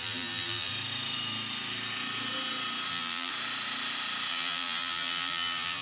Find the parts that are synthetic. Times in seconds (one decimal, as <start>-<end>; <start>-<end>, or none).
0.0-0.7; 2.9-3.3; 4.3-5.8